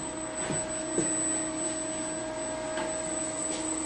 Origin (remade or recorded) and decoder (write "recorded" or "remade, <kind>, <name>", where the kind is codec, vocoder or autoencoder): recorded